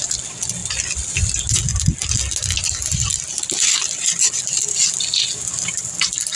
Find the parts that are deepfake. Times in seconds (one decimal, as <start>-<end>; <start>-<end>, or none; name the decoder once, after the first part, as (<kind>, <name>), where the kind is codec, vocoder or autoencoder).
none